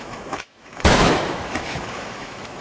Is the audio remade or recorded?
remade